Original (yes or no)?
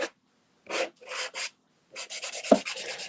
yes